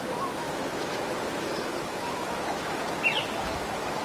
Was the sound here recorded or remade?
remade